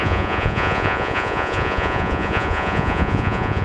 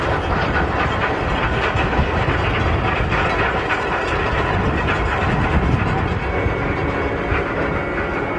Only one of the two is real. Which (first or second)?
second